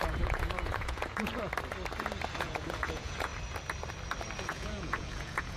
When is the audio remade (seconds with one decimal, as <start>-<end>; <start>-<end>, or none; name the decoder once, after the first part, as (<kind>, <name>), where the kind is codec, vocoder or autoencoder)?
0.0-1.3 (vocoder, Vocos); 2.4-3.3; 4.4-5.6